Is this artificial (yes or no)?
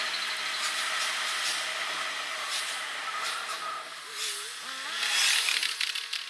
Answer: no